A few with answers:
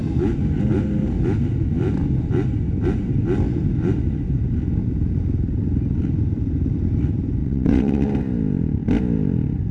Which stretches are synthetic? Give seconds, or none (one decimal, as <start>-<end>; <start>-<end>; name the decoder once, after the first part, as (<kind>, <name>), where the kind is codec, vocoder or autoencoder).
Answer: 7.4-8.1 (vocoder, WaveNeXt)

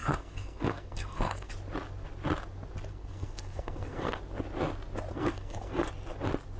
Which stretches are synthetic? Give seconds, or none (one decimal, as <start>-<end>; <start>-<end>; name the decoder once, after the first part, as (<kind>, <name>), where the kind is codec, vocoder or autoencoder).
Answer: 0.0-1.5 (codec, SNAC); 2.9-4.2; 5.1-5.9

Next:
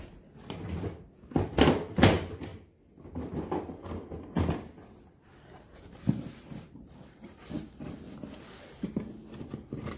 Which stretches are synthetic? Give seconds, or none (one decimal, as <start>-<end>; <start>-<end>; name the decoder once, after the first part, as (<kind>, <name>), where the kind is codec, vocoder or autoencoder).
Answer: none

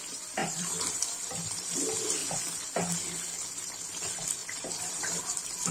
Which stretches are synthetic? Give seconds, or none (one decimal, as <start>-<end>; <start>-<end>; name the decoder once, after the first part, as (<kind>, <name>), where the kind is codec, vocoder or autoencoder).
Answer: 0.4-1.7 (vocoder, BigVGAN v2); 4.4-5.2